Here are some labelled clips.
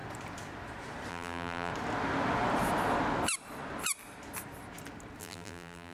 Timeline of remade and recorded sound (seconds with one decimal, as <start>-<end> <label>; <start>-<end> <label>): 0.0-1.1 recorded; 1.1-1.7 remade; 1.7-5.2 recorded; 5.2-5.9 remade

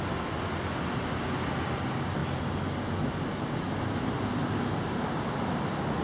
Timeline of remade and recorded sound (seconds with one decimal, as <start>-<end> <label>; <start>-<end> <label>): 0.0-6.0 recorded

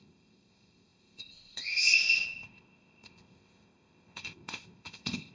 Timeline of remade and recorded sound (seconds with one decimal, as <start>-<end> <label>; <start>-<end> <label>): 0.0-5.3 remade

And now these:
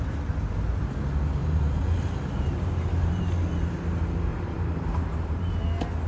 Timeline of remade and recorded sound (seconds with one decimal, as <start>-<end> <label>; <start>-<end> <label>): 0.0-1.4 recorded; 1.4-3.2 remade; 3.2-4.3 recorded; 4.3-5.5 remade; 5.5-6.1 recorded

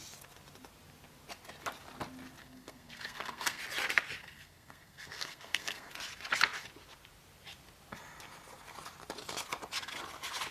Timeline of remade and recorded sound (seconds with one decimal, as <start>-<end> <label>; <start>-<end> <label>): 0.0-2.4 recorded; 2.4-3.6 remade; 3.6-4.2 recorded; 4.2-5.9 remade; 5.9-10.5 recorded

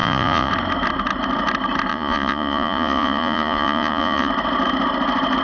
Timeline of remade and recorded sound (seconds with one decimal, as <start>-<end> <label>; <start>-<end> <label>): 0.0-0.5 remade; 0.5-1.9 recorded; 1.9-4.3 remade; 4.3-5.4 recorded

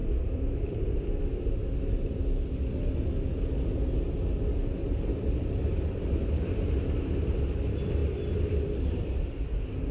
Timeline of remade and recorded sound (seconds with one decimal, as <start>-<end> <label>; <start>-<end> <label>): 0.0-2.5 remade; 2.5-4.8 recorded; 4.8-7.4 remade; 7.4-8.0 recorded; 8.0-9.3 remade; 9.3-9.9 recorded

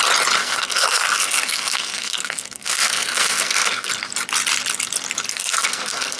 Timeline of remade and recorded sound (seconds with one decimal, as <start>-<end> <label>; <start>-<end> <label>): 0.0-0.4 recorded; 0.4-3.9 remade; 3.9-5.3 recorded; 5.3-6.2 remade